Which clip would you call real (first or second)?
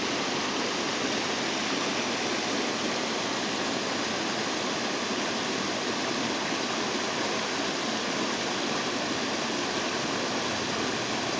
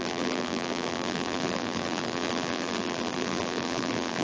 first